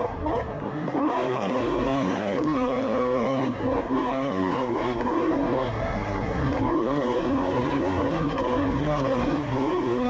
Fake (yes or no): yes